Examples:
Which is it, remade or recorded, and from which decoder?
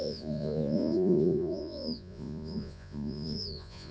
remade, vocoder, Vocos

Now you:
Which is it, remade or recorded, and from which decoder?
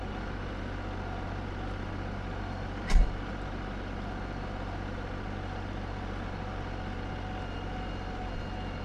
recorded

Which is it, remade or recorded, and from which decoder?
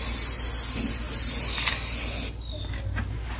recorded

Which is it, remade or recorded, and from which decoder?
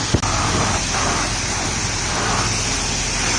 recorded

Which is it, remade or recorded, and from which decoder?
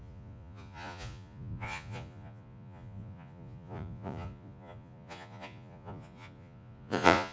remade, vocoder, Vocos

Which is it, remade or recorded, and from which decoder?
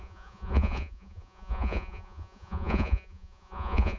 remade, vocoder, Vocos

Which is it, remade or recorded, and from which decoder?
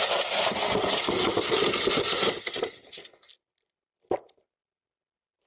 recorded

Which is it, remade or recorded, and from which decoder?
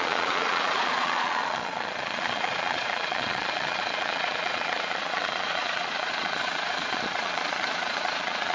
remade, vocoder, Vocos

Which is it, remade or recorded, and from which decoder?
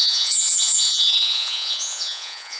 remade, vocoder, Vocos